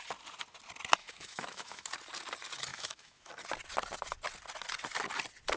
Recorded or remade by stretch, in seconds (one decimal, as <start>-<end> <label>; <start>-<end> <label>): 0.0-1.0 recorded; 1.0-1.9 remade; 1.9-2.7 recorded; 2.7-3.3 remade; 3.3-5.6 recorded